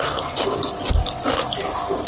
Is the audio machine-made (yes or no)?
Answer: no